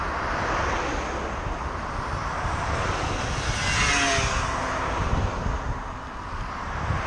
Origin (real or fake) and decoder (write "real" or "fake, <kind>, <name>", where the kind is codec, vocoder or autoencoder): real